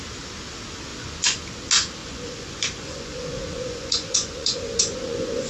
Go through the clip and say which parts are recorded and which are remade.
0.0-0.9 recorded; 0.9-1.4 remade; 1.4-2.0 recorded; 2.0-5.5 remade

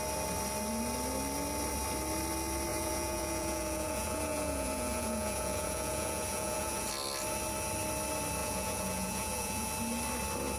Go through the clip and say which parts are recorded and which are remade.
0.0-2.7 recorded; 2.7-6.9 remade; 6.9-8.4 recorded; 8.4-9.7 remade; 9.7-10.6 recorded

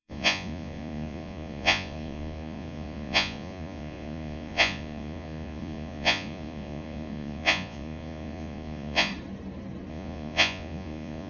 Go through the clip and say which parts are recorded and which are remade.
0.0-9.1 remade; 9.1-9.9 recorded; 9.9-11.3 remade